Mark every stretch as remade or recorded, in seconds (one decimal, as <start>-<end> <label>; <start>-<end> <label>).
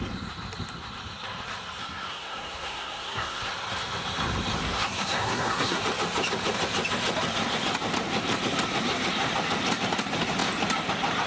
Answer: 0.0-1.8 recorded; 1.8-3.5 remade; 3.5-4.6 recorded; 4.6-5.8 remade; 5.8-11.3 recorded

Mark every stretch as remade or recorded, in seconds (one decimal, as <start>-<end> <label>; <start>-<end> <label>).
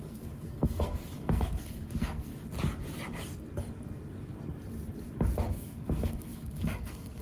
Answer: 0.0-2.3 remade; 2.3-5.5 recorded; 5.5-7.2 remade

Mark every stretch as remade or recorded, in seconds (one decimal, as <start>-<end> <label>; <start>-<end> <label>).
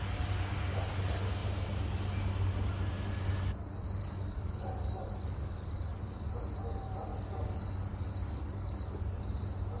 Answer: 0.0-4.0 recorded; 4.0-6.0 remade; 6.0-7.1 recorded; 7.1-9.2 remade; 9.2-9.8 recorded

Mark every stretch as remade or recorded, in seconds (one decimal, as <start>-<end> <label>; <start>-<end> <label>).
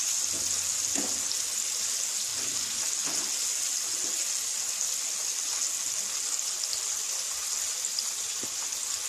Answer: 0.0-9.1 recorded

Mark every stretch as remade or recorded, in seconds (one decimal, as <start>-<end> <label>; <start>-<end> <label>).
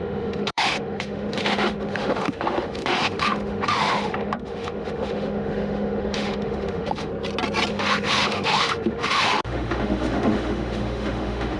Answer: 0.0-7.1 remade; 7.1-7.7 recorded; 7.7-11.6 remade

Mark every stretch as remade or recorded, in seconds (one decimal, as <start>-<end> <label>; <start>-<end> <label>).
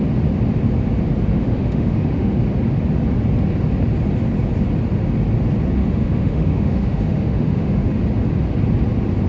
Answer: 0.0-1.3 recorded; 1.3-2.4 remade; 2.4-5.8 recorded; 5.8-8.0 remade; 8.0-9.3 recorded